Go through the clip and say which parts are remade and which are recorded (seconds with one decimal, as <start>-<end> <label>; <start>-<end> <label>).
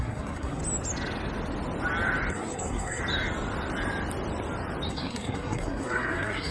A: 0.0-0.6 remade; 0.6-2.3 recorded; 2.3-3.0 remade; 3.0-4.9 recorded; 4.9-6.5 remade